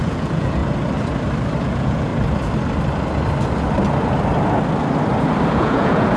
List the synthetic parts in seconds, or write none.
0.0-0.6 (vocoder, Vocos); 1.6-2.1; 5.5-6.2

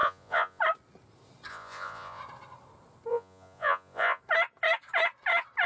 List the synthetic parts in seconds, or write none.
0.0-0.6 (vocoder, Vocos); 1.5-2.2; 3.1-4.2